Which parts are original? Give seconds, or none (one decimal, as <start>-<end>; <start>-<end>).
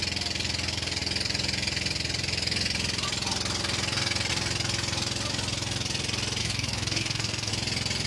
0.0-6.4; 7.5-8.1